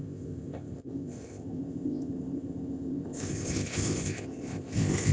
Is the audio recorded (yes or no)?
no